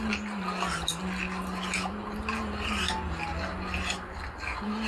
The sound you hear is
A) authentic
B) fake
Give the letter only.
A